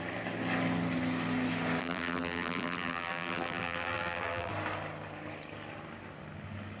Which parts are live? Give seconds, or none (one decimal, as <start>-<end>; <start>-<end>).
0.0-1.8; 4.5-6.8